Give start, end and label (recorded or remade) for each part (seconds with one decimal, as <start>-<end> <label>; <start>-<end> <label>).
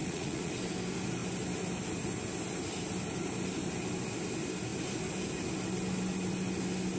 0.0-0.5 remade; 0.5-7.0 recorded